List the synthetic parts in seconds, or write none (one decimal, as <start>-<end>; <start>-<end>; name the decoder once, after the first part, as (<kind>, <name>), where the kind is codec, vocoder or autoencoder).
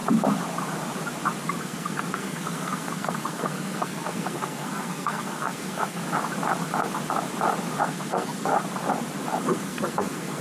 1.6-6.0 (codec, SNAC); 7.8-8.5; 9.4-10.4